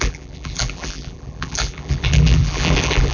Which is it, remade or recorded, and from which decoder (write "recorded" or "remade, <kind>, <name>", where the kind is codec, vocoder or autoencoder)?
remade, vocoder, BigVGAN v2